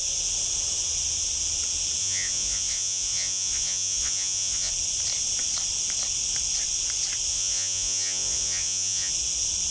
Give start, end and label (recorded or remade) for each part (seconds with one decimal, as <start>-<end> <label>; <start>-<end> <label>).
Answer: 0.0-2.0 recorded; 2.0-4.7 remade; 4.7-7.3 recorded; 7.3-9.1 remade; 9.1-9.7 recorded